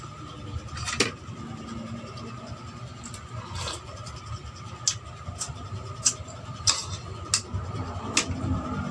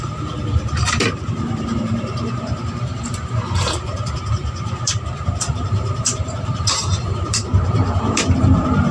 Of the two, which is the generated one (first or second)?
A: second